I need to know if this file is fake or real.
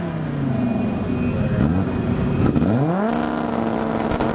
real